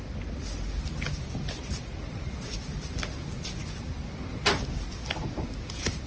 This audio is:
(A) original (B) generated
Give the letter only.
A